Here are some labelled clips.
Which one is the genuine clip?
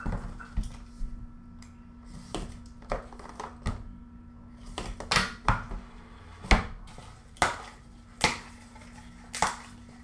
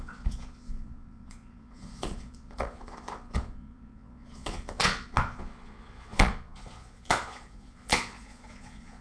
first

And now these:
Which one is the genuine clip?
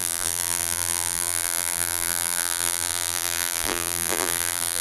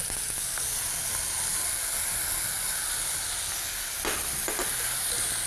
second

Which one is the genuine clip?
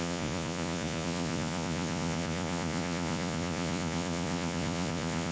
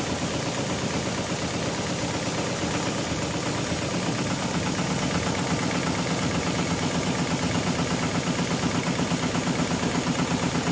second